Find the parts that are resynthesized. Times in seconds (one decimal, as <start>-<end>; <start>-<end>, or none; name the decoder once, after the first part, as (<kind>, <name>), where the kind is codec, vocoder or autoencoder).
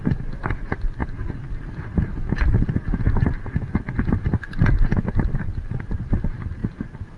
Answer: none